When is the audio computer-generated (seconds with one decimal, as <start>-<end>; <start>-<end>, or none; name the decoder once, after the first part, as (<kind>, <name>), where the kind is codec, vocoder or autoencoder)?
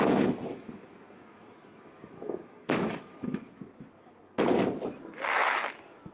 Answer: 0.5-4.2 (autoencoder, DAC-VAE); 5.4-6.1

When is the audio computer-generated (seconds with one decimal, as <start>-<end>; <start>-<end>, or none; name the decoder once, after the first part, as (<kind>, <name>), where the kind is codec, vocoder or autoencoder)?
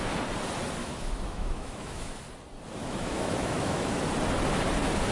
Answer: 0.8-2.2 (autoencoder, DAC-VAE); 2.8-4.0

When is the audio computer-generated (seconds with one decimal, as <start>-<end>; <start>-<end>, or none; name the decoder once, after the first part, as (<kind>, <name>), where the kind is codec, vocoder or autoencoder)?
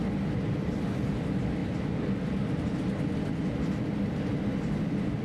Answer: none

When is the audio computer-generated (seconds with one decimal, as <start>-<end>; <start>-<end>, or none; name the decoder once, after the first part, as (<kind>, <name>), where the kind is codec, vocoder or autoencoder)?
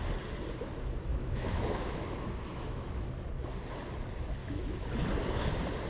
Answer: 1.1-3.1 (autoencoder, DAC-VAE); 4.4-4.9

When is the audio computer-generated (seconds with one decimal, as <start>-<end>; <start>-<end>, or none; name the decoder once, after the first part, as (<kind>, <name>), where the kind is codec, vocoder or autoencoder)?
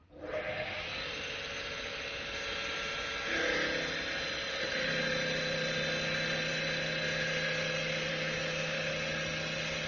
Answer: 8.1-8.9 (autoencoder, DAC-VAE)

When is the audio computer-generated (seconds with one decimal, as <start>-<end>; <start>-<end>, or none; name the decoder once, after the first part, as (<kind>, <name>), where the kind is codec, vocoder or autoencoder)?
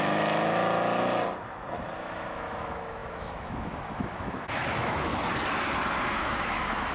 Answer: 0.0-0.6 (autoencoder, DAC-VAE); 2.0-5.1; 6.2-6.9